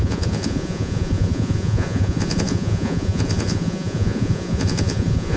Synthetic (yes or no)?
yes